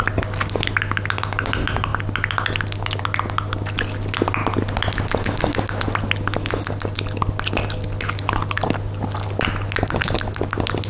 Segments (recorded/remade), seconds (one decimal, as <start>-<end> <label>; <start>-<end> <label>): 0.0-10.9 recorded